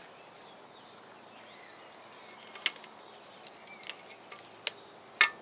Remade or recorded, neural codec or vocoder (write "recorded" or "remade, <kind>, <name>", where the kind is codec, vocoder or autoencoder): recorded